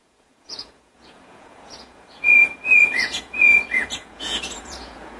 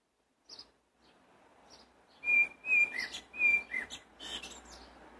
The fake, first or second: first